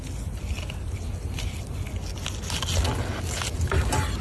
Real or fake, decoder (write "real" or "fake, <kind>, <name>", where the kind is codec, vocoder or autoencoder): real